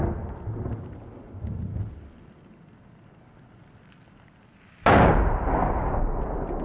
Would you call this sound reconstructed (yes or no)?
no